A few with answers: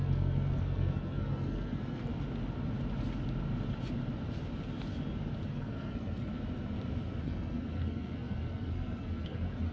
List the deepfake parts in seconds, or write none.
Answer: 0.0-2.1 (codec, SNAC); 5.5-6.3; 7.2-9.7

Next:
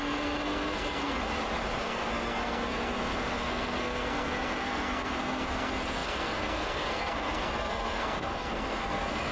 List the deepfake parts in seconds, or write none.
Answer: 0.0-1.2 (codec, SNAC); 1.8-9.3

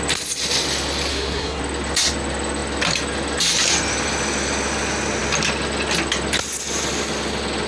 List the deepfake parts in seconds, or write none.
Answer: 1.1-1.6 (codec, SNAC)

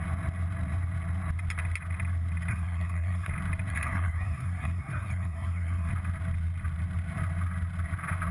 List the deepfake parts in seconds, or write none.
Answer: 2.5-3.3 (codec, SNAC); 3.7-5.9